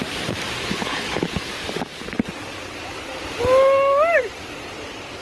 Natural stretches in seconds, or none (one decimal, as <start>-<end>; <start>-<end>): 0.0-0.6; 1.5-5.2